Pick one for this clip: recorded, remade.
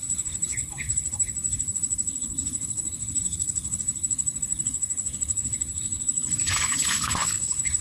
remade